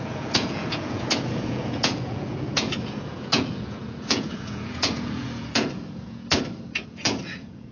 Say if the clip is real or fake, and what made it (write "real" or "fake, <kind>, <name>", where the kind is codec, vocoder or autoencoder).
fake, vocoder, Vocos